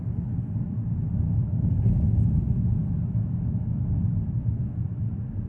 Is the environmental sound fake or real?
real